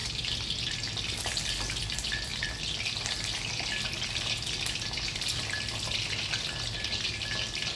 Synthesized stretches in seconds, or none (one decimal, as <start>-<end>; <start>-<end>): none